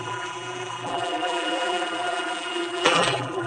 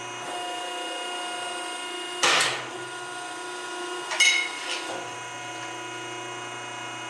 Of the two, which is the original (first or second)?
second